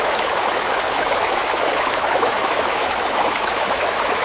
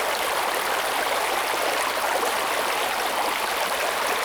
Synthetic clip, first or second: first